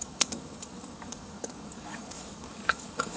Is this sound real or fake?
fake